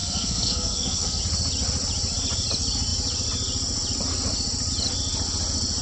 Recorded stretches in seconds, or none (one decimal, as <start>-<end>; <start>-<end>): 1.2-5.8